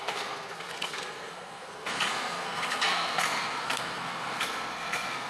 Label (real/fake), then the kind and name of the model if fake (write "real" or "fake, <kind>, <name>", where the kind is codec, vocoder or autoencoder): fake, codec, SNAC